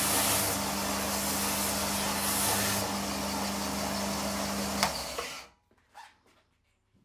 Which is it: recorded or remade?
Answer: recorded